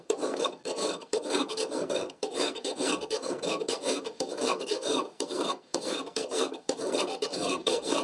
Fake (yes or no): yes